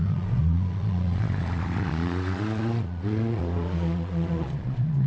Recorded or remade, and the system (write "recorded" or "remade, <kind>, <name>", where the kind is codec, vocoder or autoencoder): remade, vocoder, Vocos